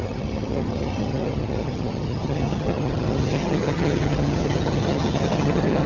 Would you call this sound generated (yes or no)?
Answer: yes